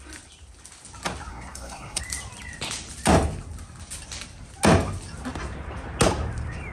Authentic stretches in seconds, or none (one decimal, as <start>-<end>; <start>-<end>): 0.0-1.3; 2.0-6.7